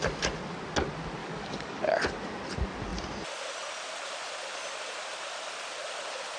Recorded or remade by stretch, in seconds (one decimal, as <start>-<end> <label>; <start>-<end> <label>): 0.0-1.2 recorded; 1.2-1.8 remade; 1.8-6.4 recorded

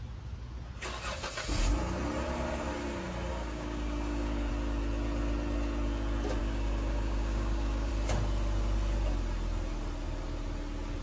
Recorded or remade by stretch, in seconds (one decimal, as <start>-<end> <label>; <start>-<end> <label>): 0.0-3.3 recorded; 3.3-4.5 remade; 4.5-6.4 recorded; 6.4-7.9 remade; 7.9-11.0 recorded

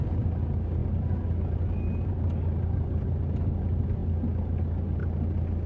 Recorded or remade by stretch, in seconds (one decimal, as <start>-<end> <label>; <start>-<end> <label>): 0.0-5.7 recorded

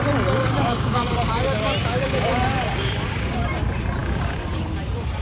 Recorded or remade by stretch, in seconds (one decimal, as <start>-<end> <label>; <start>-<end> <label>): 0.0-0.4 recorded; 0.4-1.1 remade; 1.1-1.8 recorded; 1.8-3.6 remade; 3.6-4.0 recorded; 4.0-4.7 remade; 4.7-5.2 recorded

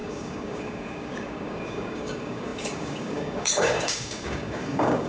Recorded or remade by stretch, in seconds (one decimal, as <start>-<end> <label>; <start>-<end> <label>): 0.0-5.1 remade

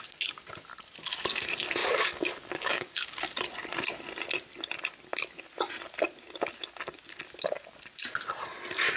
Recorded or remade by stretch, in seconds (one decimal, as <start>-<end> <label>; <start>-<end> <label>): 0.0-1.8 recorded; 1.8-3.2 remade; 3.2-9.0 recorded